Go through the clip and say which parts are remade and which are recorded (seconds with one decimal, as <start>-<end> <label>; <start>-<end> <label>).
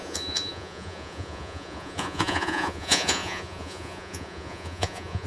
0.0-5.3 remade